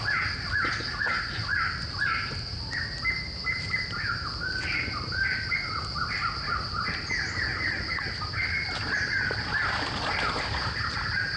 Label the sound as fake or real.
real